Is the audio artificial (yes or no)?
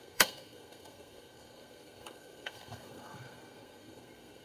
yes